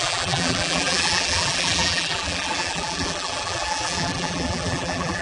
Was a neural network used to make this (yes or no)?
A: yes